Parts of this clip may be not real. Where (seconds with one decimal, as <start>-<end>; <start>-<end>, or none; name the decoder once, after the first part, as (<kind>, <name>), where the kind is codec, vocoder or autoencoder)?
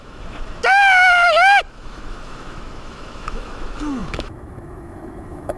0.0-0.6 (autoencoder, DAC-VAE); 1.7-5.6